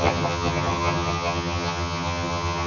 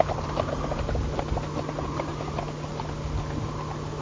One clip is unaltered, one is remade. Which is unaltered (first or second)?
second